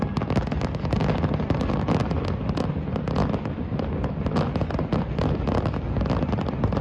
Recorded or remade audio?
recorded